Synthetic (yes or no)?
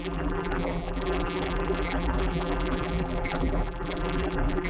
yes